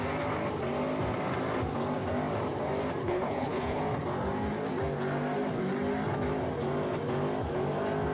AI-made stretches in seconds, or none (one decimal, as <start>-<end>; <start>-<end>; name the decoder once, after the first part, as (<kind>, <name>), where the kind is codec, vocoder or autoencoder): 3.0-3.8 (codec, HILCodec)